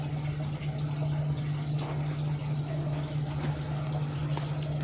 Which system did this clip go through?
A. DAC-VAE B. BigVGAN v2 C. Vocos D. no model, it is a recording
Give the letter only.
D